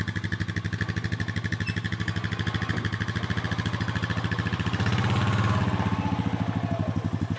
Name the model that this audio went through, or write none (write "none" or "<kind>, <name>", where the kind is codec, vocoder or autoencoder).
none